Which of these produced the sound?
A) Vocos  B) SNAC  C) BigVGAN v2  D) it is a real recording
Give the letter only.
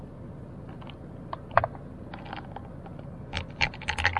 D